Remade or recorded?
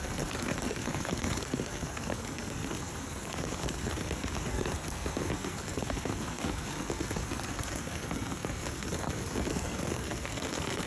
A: remade